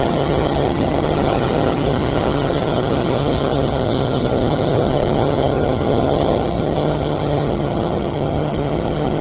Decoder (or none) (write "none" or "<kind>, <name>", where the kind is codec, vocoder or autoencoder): vocoder, HiFi-GAN